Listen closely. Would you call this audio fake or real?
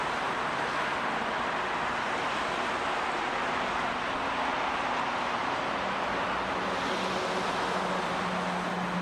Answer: real